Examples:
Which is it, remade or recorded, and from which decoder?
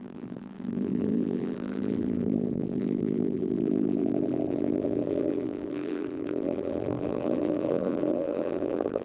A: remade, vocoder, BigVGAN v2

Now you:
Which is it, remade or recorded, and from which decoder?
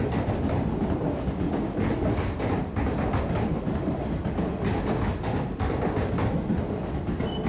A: recorded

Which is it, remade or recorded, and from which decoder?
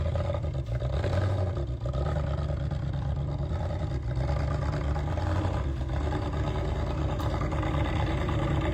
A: recorded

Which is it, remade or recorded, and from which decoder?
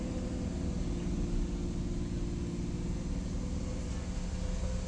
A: recorded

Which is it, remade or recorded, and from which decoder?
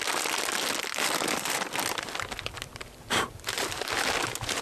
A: recorded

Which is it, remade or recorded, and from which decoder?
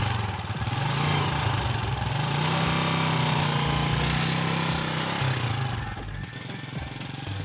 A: recorded